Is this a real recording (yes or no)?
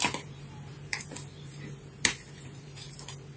no